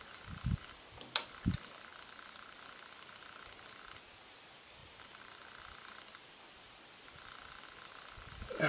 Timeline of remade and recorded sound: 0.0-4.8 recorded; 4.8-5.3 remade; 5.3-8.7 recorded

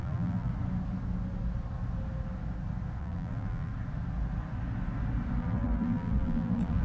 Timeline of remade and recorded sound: 0.0-0.5 remade; 0.5-3.0 recorded; 3.0-3.7 remade; 3.7-5.4 recorded; 5.4-6.8 remade

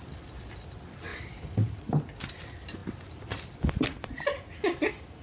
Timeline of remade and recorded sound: 0.0-1.1 recorded; 1.1-1.8 remade; 1.8-5.2 recorded

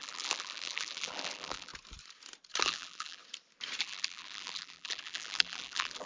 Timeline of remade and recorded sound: 0.0-1.7 remade; 1.7-2.6 recorded; 2.6-3.2 remade; 3.2-3.8 recorded; 3.8-6.1 remade

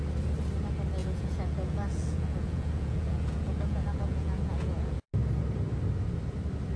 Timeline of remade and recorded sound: 0.0-1.0 recorded; 1.0-5.1 remade; 5.1-6.8 recorded

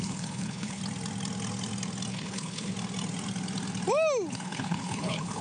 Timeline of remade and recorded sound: 0.0-0.8 remade; 0.8-2.1 recorded; 2.1-2.7 remade; 2.7-4.3 recorded; 4.3-5.4 remade

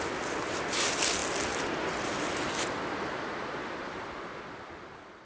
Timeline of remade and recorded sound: 0.0-5.2 recorded

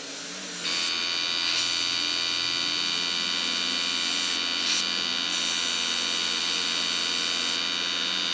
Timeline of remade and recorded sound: 0.0-8.3 recorded